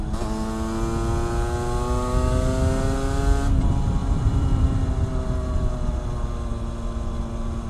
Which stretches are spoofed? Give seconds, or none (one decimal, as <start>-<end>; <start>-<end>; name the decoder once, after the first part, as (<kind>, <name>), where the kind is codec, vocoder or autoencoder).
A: 4.0-4.9 (vocoder, BigVGAN v2)

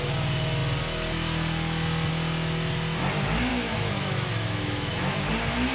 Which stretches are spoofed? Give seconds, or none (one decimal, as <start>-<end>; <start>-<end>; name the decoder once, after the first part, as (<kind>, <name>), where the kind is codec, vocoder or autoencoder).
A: 3.5-5.3 (autoencoder, DAC-VAE)

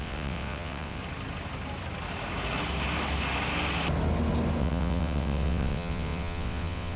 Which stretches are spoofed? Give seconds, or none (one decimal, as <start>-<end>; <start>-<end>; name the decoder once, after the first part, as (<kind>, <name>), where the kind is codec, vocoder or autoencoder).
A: 0.0-1.0 (vocoder, WaveNeXt); 4.6-7.0